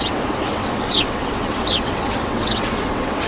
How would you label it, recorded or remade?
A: remade